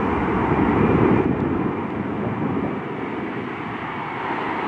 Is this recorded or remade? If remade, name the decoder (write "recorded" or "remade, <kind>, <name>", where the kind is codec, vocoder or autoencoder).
recorded